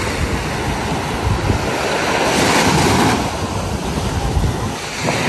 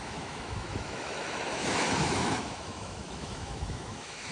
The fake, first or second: second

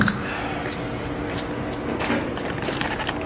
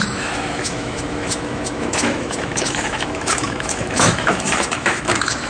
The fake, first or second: second